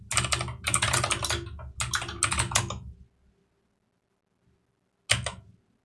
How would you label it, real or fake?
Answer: real